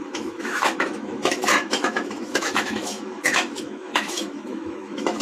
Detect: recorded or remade remade